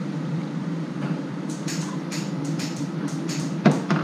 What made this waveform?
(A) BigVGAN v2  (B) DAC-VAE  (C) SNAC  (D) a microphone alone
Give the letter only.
A